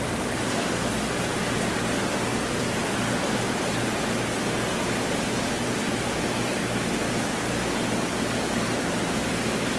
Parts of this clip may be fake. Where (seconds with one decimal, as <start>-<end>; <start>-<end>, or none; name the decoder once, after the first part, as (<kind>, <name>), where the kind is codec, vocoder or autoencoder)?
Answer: none